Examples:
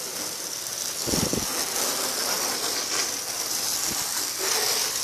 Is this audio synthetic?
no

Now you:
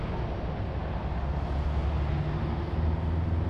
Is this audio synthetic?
no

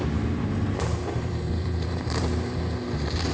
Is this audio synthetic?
yes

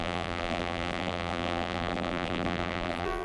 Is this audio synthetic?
yes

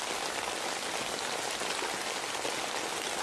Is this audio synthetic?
no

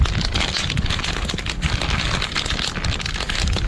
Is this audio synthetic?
no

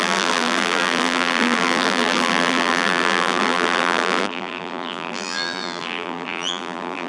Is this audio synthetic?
yes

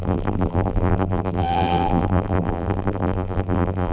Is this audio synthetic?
yes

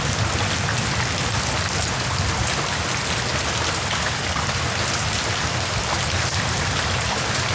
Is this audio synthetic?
no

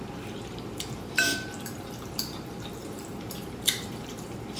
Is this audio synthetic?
yes